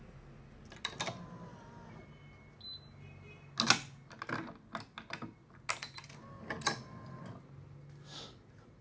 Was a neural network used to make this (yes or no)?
no